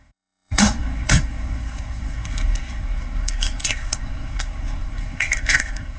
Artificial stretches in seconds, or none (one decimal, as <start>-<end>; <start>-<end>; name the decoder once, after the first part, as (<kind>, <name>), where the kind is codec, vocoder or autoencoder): 0.0-6.0 (codec, SNAC)